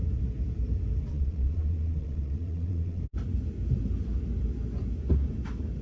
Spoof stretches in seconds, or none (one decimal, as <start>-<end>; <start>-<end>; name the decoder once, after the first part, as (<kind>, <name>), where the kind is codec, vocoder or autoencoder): 1.1-3.0 (vocoder, Vocos)